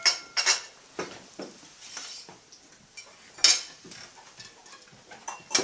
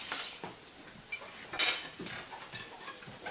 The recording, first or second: first